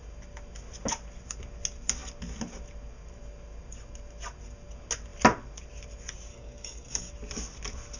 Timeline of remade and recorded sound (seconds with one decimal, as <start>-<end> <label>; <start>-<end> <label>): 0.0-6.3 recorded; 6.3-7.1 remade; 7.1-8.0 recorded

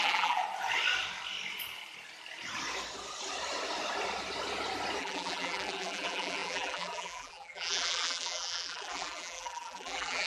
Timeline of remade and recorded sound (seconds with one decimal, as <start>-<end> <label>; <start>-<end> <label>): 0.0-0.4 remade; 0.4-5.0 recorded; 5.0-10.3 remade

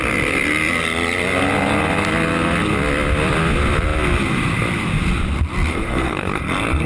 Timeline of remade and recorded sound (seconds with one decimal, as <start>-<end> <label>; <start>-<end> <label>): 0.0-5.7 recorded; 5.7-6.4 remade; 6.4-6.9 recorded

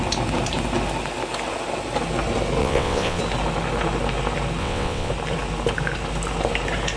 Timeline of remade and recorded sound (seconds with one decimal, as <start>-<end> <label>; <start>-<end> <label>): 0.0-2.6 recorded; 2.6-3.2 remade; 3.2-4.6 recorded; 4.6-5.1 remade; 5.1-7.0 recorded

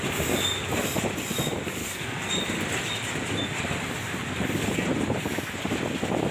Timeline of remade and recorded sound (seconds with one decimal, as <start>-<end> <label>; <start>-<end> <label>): 0.0-1.8 recorded; 1.8-2.3 remade; 2.3-6.3 recorded

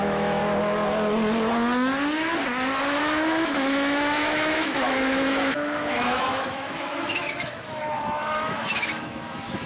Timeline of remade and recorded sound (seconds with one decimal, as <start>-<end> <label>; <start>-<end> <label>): 0.0-0.4 remade; 0.4-3.0 recorded; 3.0-9.7 remade

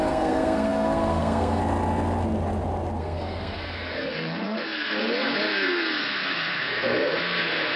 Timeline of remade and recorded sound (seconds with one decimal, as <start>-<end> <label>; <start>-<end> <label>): 0.0-1.6 remade; 1.6-3.0 recorded; 3.0-7.8 remade